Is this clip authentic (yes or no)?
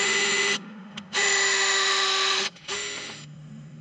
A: no